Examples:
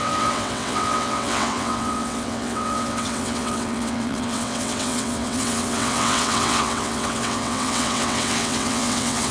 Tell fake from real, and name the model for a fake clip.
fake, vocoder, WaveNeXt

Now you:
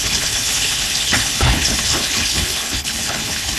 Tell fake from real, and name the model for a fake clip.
fake, codec, HILCodec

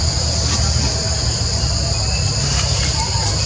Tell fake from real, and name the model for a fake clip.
real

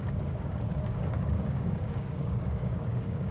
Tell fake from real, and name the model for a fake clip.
fake, codec, DAC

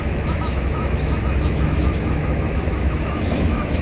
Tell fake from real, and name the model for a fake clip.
fake, autoencoder, DAC-VAE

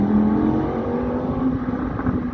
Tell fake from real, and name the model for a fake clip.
real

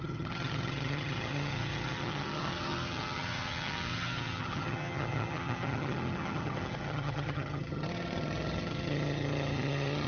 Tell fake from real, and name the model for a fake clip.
fake, vocoder, HiFi-GAN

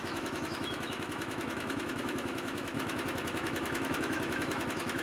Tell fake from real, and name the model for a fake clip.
fake, autoencoder, DAC-VAE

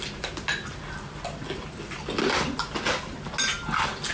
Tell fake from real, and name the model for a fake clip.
real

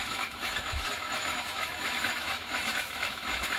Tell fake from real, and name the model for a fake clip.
fake, autoencoder, DAC-VAE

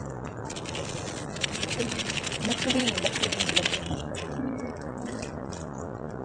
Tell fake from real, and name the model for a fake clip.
fake, vocoder, Vocos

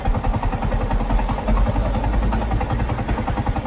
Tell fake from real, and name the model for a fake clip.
real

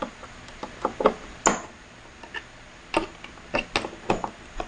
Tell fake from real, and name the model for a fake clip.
real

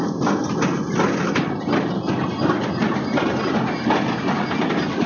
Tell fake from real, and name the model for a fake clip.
real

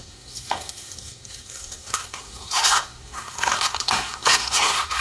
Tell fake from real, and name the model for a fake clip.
fake, codec, SNAC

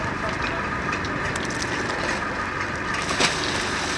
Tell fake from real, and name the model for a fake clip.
real